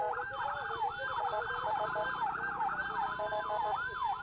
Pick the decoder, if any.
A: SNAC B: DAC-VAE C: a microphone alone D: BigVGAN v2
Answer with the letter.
C